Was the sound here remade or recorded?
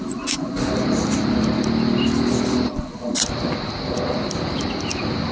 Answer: recorded